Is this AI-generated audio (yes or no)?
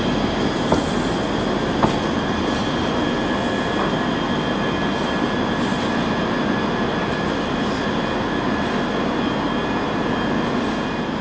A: no